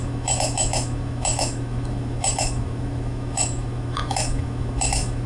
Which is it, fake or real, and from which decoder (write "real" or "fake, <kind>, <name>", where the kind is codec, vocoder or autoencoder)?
fake, autoencoder, DAC-VAE